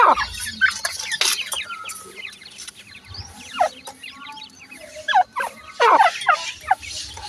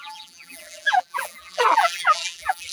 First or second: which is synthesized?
second